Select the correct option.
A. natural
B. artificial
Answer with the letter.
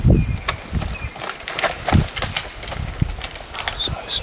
A